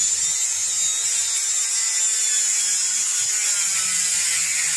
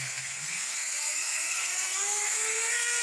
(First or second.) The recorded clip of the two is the first